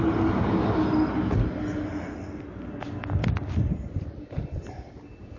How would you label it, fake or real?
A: real